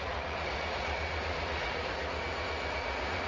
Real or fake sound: fake